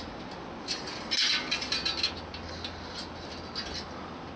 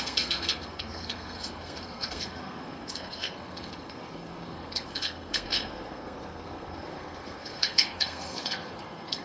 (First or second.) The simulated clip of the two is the second